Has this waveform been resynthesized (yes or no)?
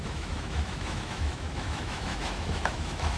yes